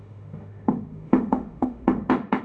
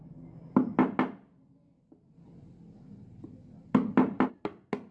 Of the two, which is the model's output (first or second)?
first